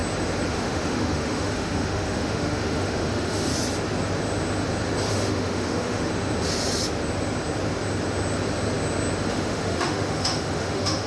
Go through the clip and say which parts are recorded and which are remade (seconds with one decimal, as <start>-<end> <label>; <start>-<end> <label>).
0.0-0.5 recorded; 0.5-3.5 remade; 3.5-5.1 recorded; 5.1-6.1 remade; 6.1-9.3 recorded; 9.3-11.1 remade

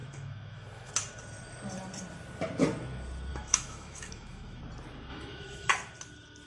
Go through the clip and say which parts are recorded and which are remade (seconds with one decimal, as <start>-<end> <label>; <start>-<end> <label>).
0.0-0.9 remade; 0.9-3.3 recorded; 3.3-4.6 remade; 4.6-5.1 recorded; 5.1-5.7 remade; 5.7-6.5 recorded

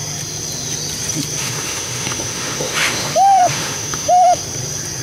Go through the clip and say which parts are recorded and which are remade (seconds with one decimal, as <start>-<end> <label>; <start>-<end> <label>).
0.0-1.4 recorded; 1.4-4.4 remade; 4.4-5.0 recorded

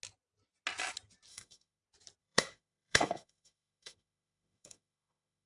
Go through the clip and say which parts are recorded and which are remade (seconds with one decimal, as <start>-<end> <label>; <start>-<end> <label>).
0.0-1.3 recorded; 1.3-1.8 remade; 1.8-2.2 recorded; 2.2-5.5 remade

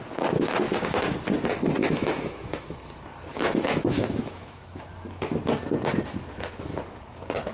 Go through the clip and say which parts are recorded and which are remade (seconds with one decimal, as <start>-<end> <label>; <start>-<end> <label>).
0.0-1.8 recorded; 1.8-2.8 remade; 2.8-3.3 recorded; 3.3-4.8 remade; 4.8-7.5 recorded